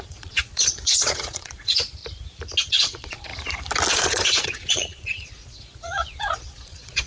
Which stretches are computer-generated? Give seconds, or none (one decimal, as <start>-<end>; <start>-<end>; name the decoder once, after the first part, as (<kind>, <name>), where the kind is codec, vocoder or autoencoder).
0.0-2.0 (vocoder, Vocos); 2.7-3.3; 3.9-7.1